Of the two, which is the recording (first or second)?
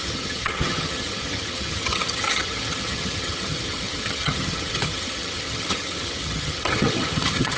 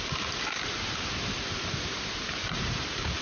second